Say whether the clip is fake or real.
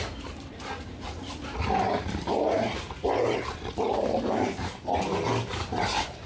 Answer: real